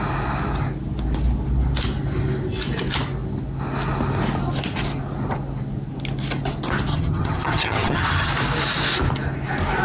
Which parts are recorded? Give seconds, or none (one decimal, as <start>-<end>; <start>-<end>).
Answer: 0.0-6.9; 8.3-9.8